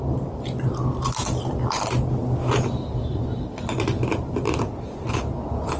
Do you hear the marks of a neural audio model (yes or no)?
no